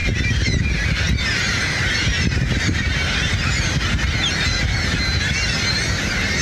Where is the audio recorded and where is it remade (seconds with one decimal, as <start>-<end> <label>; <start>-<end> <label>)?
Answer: 0.0-3.6 remade; 3.6-6.4 recorded